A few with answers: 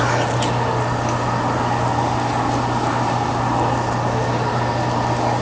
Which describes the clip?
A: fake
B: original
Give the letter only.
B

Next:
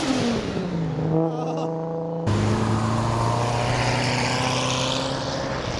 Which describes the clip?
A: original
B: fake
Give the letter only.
A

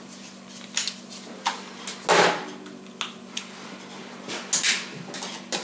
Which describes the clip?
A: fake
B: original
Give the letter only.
B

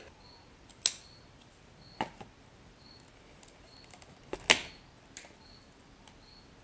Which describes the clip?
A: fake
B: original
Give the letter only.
B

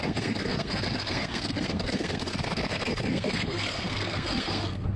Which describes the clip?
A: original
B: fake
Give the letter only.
B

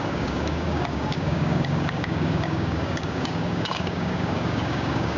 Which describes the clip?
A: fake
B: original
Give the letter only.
A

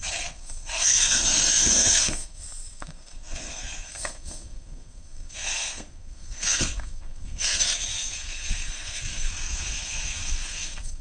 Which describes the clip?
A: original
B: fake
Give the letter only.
B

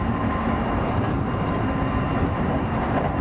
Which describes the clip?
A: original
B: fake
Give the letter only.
B